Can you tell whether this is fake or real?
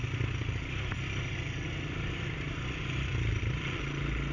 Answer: real